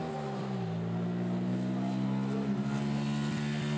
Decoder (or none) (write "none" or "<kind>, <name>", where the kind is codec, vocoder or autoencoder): none